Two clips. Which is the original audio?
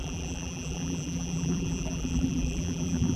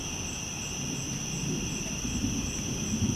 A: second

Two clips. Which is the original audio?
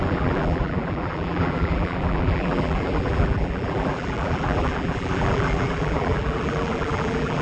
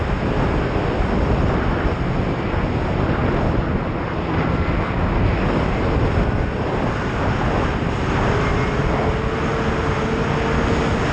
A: second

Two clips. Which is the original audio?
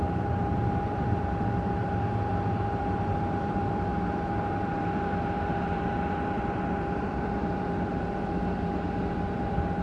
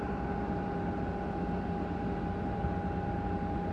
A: second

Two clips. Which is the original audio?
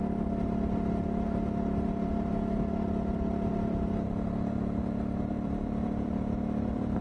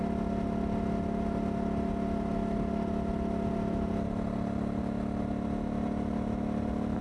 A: second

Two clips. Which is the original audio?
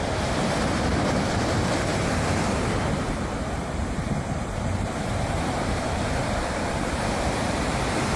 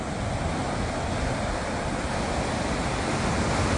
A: second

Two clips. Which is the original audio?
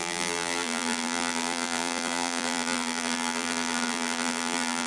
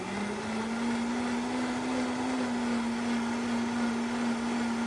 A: second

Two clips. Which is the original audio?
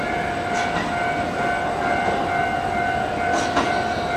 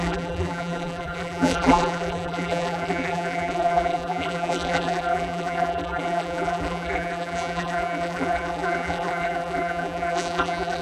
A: first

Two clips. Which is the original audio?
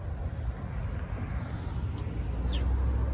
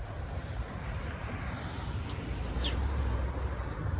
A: first